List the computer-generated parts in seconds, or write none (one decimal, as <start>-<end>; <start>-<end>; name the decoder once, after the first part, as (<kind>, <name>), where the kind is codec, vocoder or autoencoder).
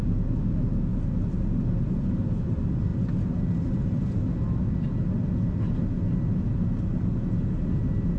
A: none